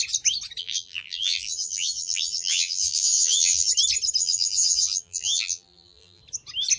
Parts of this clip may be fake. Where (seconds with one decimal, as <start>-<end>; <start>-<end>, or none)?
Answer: 0.6-3.7; 4.2-6.2